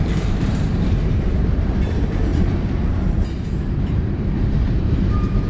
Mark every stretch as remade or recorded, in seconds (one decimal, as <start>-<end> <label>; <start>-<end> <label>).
0.0-5.5 remade